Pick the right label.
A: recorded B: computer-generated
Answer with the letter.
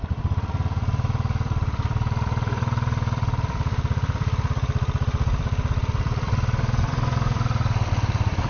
B